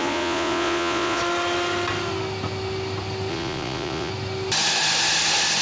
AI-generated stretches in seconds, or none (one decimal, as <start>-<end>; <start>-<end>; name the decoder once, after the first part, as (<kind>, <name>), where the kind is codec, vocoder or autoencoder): 0.0-1.2 (vocoder, Vocos); 3.3-4.1